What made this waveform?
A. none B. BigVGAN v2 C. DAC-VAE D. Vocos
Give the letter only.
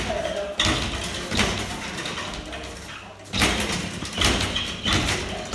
A